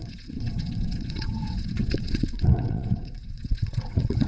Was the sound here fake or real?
fake